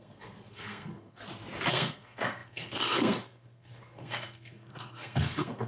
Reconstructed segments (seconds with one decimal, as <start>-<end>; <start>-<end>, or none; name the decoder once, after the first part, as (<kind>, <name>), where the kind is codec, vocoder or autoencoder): 0.0-1.2 (codec, SNAC); 1.7-5.7